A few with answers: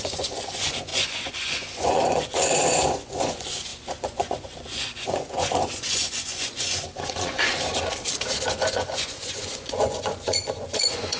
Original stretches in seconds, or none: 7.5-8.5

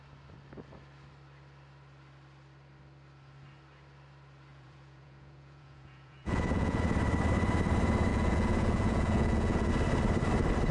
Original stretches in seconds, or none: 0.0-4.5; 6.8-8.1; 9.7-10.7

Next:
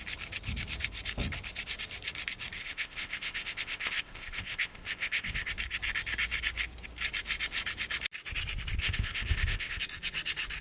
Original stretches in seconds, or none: 0.0-2.6; 5.5-8.8; 9.8-10.6